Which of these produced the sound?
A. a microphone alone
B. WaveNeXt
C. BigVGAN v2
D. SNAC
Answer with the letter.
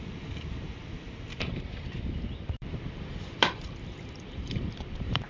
C